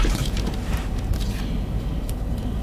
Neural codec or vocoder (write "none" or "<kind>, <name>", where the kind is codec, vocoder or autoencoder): vocoder, BigVGAN v2